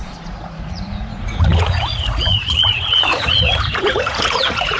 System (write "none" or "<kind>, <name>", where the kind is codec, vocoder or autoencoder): vocoder, Vocos